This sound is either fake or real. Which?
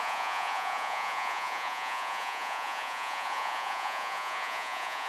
fake